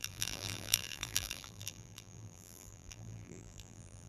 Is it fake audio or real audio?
fake